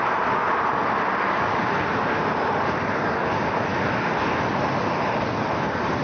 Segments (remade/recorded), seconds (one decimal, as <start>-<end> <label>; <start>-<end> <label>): 0.0-6.0 recorded